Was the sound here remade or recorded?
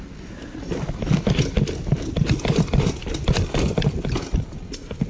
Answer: recorded